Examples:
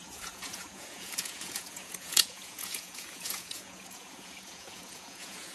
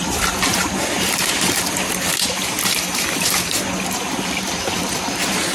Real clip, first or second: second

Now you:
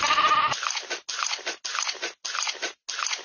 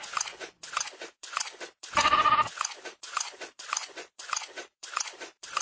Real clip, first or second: first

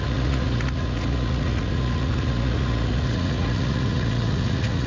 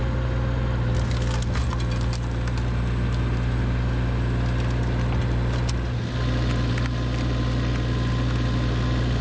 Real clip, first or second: second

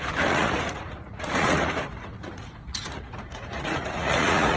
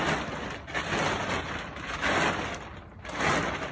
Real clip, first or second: second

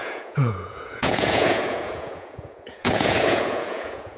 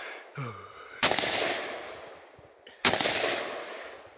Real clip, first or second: second